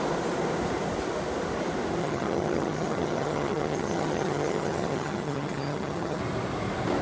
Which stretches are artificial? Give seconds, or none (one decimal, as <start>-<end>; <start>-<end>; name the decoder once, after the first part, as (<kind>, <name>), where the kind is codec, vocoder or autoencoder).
2.0-6.2 (vocoder, HiFi-GAN)